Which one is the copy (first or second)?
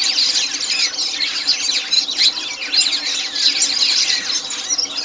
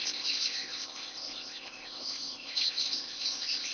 second